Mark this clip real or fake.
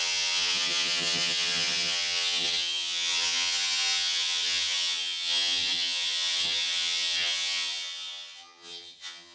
fake